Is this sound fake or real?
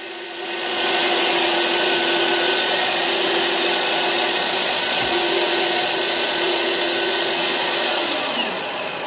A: fake